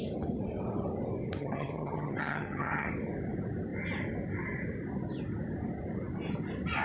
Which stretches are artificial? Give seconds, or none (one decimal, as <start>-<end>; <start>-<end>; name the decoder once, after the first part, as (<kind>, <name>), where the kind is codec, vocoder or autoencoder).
1.4-2.9 (vocoder, HiFi-GAN)